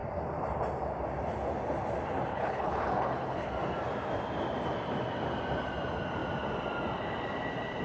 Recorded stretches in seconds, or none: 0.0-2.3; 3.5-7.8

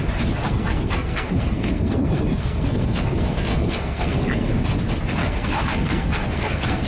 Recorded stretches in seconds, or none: 0.0-0.4; 4.5-5.2

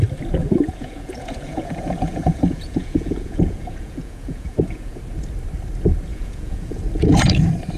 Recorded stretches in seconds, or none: 0.0-0.4; 5.0-6.1; 6.8-7.8

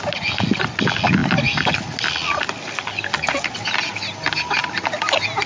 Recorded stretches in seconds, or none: 0.0-5.5